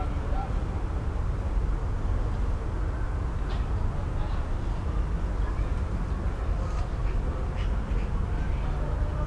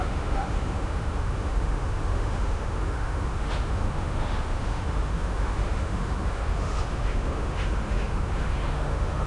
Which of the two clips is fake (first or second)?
second